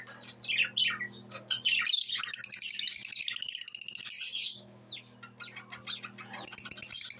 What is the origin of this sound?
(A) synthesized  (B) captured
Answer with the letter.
B